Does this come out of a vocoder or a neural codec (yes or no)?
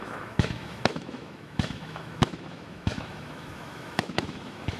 yes